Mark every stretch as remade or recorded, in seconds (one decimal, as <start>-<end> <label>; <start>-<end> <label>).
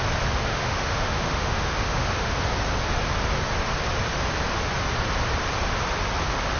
0.0-0.5 recorded; 0.5-2.3 remade; 2.3-6.6 recorded